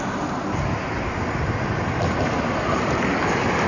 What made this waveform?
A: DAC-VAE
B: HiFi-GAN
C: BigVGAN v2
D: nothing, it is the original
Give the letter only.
D